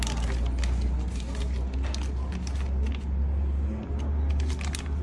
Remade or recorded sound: recorded